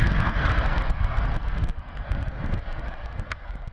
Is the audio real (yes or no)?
no